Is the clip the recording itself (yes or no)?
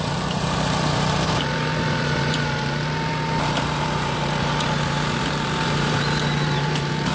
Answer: no